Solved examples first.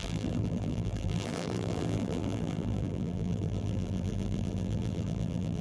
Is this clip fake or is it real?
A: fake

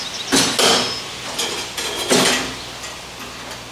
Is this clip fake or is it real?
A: real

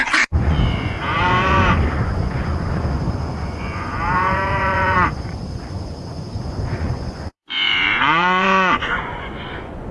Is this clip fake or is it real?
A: fake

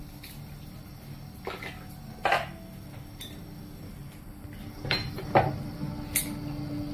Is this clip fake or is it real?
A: real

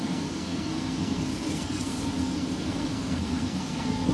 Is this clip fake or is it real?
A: fake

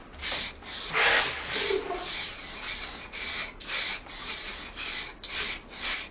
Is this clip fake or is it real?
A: real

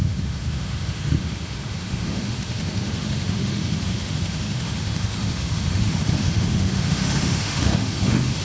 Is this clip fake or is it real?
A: fake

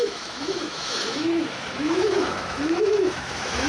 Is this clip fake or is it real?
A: fake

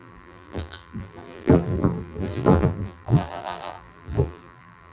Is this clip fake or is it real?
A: fake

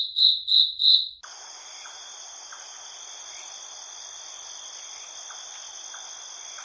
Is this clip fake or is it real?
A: real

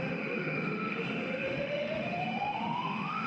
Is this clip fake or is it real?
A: fake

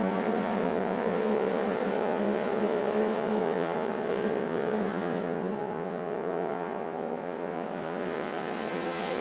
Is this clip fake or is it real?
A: fake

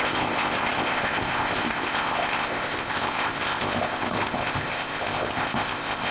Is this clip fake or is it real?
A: fake